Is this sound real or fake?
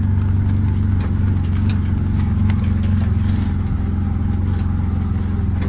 real